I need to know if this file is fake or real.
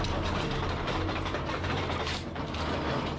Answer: fake